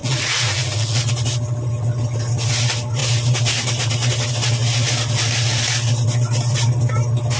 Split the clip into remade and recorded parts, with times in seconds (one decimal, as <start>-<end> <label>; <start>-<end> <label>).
0.0-1.1 remade; 1.1-7.4 recorded

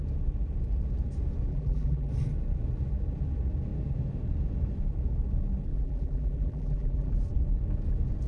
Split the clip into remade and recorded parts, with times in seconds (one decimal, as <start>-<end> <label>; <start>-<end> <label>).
0.0-1.5 recorded; 1.5-2.1 remade; 2.1-5.7 recorded; 5.7-7.1 remade; 7.1-8.3 recorded

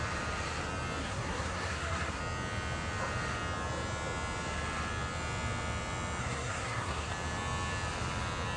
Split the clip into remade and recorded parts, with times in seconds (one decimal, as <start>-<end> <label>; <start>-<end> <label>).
0.0-1.0 recorded; 1.0-2.2 remade; 2.2-6.2 recorded; 6.2-7.1 remade; 7.1-8.6 recorded